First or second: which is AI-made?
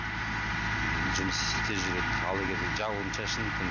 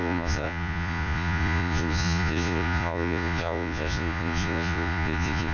second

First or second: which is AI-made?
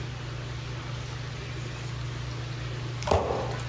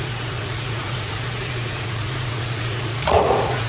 second